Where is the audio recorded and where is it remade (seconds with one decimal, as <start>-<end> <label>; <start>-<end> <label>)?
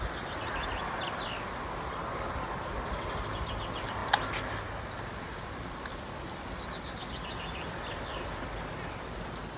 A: 0.0-9.6 recorded